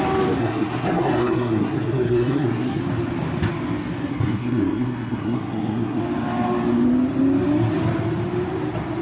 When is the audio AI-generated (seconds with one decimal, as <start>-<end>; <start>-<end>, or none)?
0.4-2.8; 4.1-6.0